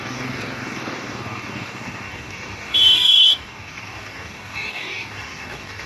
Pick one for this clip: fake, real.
fake